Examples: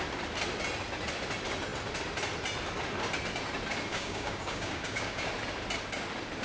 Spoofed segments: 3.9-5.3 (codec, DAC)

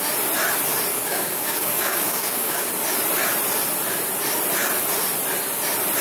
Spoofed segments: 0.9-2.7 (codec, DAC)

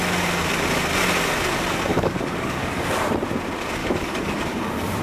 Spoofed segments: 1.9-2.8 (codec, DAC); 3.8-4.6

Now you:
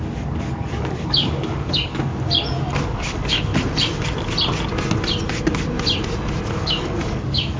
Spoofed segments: 0.0-2.1 (codec, DAC); 2.8-3.5; 6.5-7.6

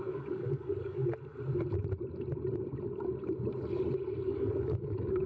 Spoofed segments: 0.0-1.0 (codec, DAC); 4.2-5.3

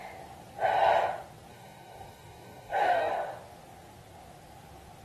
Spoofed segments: 1.5-3.1 (codec, DAC)

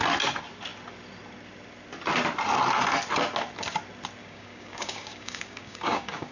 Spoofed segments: 4.2-6.3 (codec, DAC)

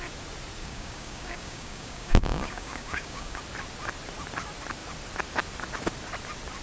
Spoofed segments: 0.6-3.4 (codec, DAC)